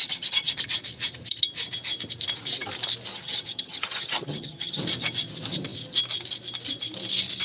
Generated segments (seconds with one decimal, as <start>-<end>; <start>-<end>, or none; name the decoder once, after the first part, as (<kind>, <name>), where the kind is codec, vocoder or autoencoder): 0.0-0.5 (vocoder, HiFi-GAN); 3.1-4.8